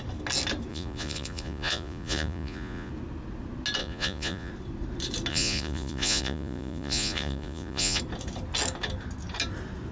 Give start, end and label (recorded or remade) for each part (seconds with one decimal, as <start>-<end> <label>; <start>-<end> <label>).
0.0-0.7 recorded; 0.7-2.9 remade; 2.9-3.8 recorded; 3.8-4.5 remade; 4.5-5.3 recorded; 5.3-8.0 remade; 8.0-9.9 recorded